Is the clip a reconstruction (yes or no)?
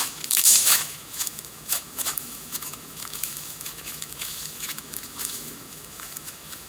yes